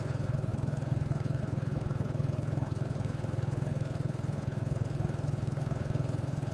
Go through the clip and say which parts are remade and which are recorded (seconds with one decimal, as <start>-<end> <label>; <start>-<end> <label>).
0.0-6.5 remade